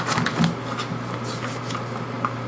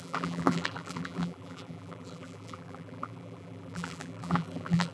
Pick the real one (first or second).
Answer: first